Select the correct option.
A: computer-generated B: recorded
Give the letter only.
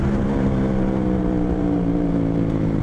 A